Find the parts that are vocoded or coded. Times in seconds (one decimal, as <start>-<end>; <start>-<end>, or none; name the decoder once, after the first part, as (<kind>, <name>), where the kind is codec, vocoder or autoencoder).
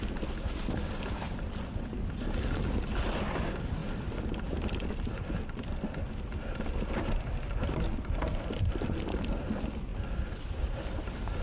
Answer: none